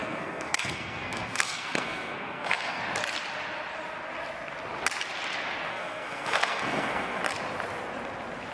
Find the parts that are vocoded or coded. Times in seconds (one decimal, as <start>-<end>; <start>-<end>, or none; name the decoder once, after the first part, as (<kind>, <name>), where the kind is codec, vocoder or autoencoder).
0.0-2.8 (codec, SNAC); 5.7-7.2